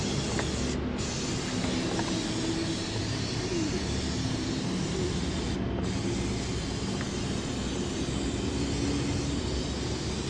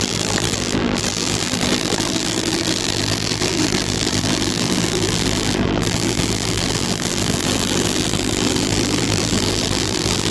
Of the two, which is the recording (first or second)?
first